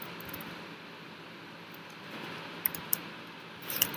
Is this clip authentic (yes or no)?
yes